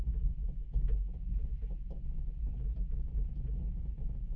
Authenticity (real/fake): real